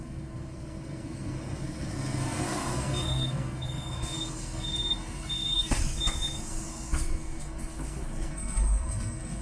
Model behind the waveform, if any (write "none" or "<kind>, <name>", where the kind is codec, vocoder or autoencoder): codec, SNAC